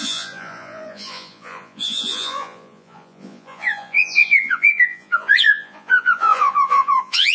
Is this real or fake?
fake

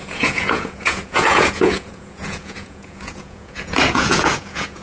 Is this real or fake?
fake